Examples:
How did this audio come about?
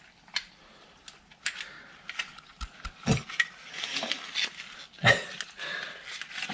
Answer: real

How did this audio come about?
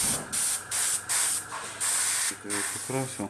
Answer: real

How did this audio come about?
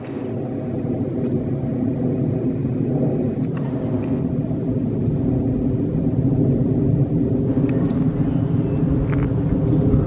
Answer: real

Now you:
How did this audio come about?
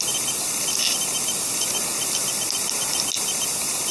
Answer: real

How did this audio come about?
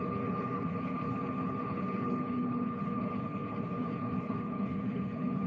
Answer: fake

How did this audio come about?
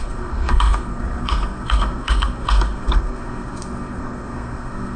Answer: fake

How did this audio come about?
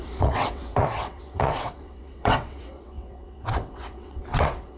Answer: fake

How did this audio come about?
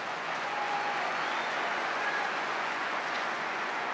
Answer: fake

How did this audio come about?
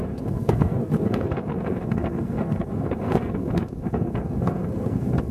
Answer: fake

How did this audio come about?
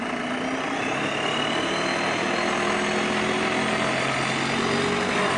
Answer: real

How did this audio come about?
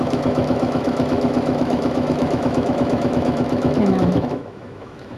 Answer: fake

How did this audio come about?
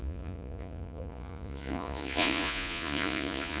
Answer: fake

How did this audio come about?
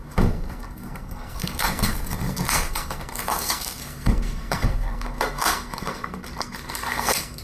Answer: fake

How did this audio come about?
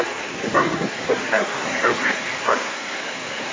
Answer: fake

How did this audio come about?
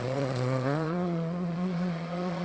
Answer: fake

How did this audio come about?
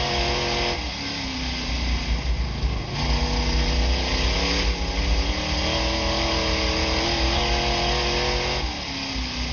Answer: real